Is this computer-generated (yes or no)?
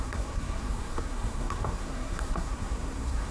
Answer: yes